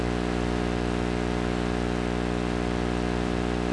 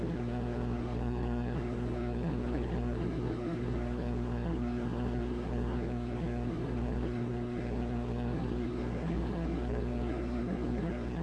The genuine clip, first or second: first